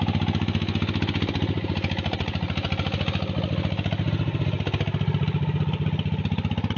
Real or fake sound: real